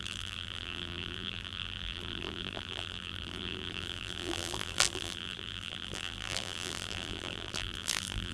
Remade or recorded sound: remade